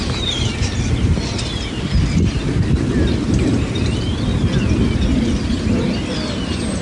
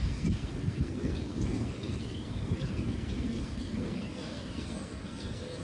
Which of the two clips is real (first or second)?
first